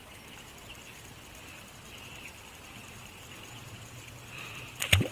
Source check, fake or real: fake